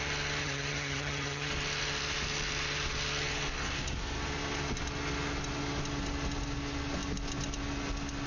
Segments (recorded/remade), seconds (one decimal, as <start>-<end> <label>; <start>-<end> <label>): 0.0-0.4 recorded; 0.4-1.5 remade; 1.5-8.3 recorded